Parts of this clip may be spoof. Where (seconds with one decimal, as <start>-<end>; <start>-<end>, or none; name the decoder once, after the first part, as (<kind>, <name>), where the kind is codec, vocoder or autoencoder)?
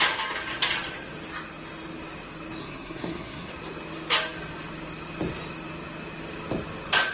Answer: 2.6-3.5 (codec, SNAC)